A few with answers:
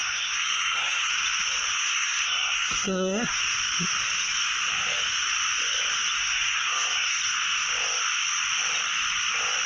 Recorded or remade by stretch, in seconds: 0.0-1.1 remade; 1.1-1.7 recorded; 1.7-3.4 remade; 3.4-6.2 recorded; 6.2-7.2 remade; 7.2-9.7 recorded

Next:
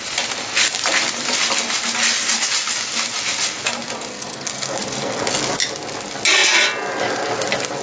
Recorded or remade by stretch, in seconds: 0.0-4.1 recorded; 4.1-5.2 remade; 5.2-7.8 recorded

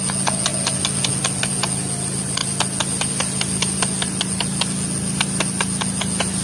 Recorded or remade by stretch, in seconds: 0.0-6.4 recorded

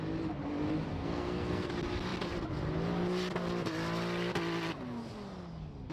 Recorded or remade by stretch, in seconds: 0.0-0.9 recorded; 0.9-1.7 remade; 1.7-5.9 recorded